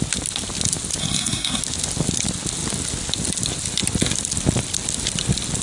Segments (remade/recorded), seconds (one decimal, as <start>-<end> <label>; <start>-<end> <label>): 0.0-1.0 recorded; 1.0-1.6 remade; 1.6-5.6 recorded